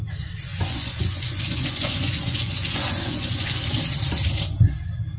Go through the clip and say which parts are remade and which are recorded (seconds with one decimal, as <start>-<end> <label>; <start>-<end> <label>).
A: 0.0-0.5 recorded; 0.5-3.6 remade; 3.6-5.2 recorded

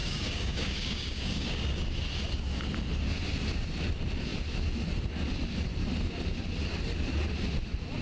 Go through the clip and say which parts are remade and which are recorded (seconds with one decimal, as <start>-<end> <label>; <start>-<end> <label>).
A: 0.0-1.6 remade; 1.6-8.0 recorded